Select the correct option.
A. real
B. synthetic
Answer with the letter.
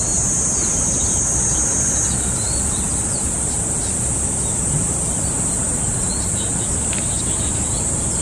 A